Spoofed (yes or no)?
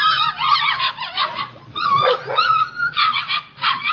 yes